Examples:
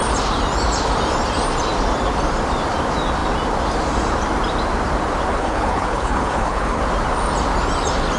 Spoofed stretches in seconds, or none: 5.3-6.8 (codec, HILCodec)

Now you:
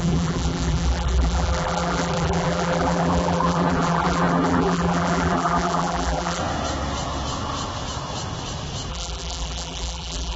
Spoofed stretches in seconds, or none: 0.0-6.4 (vocoder, BigVGAN v2); 8.9-10.4

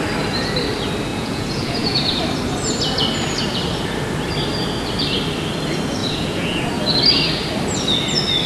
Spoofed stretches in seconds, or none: 1.1-2.2 (vocoder, Vocos); 6.0-6.7

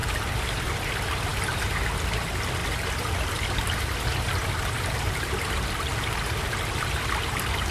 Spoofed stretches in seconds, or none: 2.6-5.3 (vocoder, BigVGAN v2)

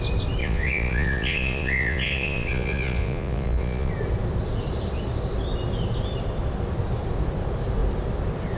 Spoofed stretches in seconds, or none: 0.4-3.9 (vocoder, Vocos)

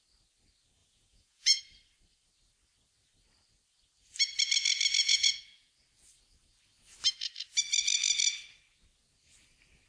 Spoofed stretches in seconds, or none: 0.8-1.6 (vocoder, Vocos); 5.0-5.7